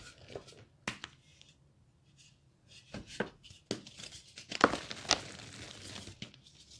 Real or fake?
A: real